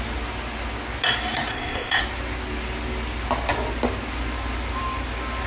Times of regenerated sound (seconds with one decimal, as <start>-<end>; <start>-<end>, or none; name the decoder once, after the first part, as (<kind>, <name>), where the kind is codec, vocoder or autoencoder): 1.5-2.0 (codec, ZipCodec)